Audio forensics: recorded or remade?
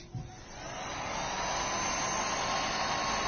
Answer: recorded